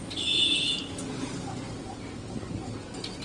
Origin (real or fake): real